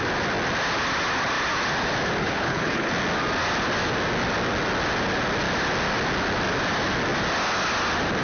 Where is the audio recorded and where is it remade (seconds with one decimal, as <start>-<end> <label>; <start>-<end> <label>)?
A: 0.0-2.2 recorded; 2.2-2.9 remade; 2.9-8.2 recorded